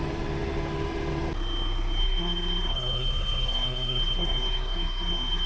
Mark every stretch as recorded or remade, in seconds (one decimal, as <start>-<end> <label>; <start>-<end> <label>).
0.0-2.0 recorded; 2.0-5.5 remade